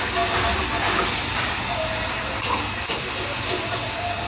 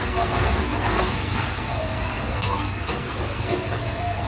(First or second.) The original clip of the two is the first